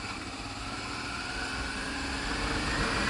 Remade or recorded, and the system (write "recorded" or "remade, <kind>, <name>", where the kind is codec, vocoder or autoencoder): recorded